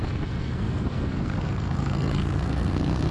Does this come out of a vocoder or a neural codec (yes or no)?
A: yes